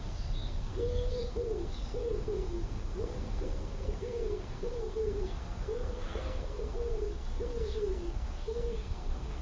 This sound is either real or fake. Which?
fake